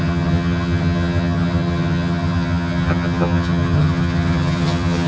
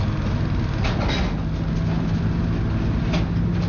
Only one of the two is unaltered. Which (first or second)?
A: second